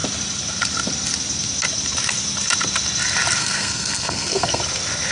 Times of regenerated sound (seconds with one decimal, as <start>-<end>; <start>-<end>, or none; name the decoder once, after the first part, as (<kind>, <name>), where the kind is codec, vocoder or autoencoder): 3.4-4.6 (codec, SNAC)